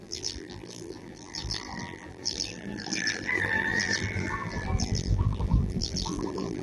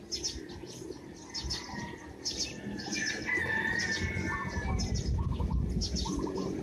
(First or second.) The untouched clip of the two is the second